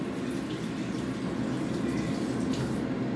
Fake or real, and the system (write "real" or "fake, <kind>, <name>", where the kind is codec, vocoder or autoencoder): real